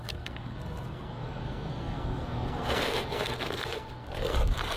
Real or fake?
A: fake